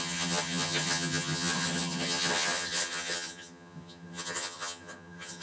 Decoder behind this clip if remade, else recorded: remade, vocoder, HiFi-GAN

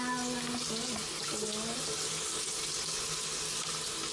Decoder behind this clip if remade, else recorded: recorded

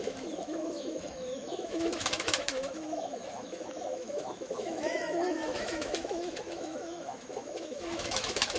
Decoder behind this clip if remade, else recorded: remade, autoencoder, DAC-VAE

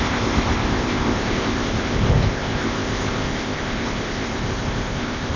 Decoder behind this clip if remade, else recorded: remade, codec, ZipCodec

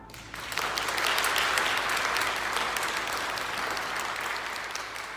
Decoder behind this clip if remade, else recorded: recorded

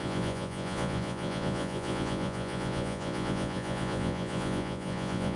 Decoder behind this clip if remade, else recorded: remade, vocoder, Vocos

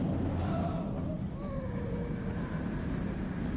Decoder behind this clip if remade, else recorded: recorded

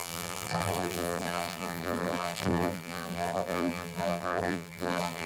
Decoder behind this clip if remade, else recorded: remade, vocoder, BigVGAN v2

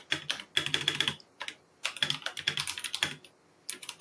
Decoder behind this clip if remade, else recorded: recorded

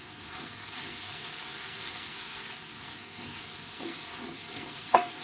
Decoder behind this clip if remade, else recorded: remade, codec, SNAC